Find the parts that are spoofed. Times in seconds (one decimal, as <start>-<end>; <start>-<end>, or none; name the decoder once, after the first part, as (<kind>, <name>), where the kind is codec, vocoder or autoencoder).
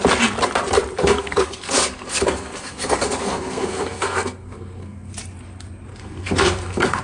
1.0-5.1 (codec, SNAC); 5.9-7.0